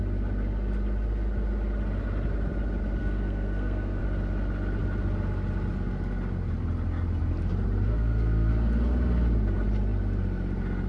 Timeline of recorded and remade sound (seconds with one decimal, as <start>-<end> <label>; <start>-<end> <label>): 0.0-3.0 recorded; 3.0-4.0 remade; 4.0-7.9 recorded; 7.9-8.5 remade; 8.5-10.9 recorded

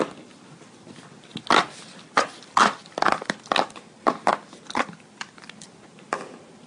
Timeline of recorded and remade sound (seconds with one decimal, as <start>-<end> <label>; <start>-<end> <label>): 0.0-6.7 recorded

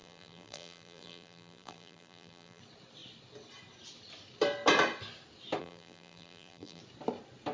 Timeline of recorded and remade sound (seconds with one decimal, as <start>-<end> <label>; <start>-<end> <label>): 0.0-2.6 remade; 2.6-5.6 recorded; 5.6-6.8 remade; 6.8-7.5 recorded

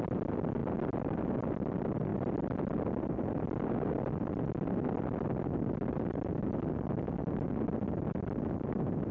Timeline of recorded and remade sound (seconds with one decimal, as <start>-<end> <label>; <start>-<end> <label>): 0.0-9.1 recorded